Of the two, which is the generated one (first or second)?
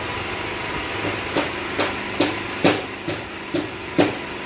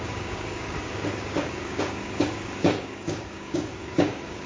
second